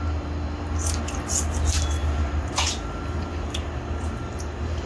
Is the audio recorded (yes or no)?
yes